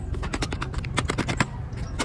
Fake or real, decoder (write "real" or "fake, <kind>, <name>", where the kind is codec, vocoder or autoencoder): real